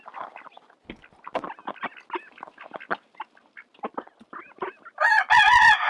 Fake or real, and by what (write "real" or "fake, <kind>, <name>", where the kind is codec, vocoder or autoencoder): real